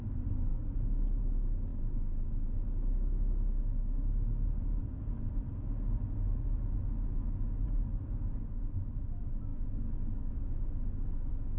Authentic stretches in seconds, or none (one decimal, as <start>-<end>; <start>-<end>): 0.0-11.6